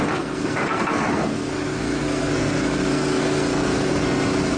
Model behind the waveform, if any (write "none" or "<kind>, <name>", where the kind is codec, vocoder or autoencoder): codec, SNAC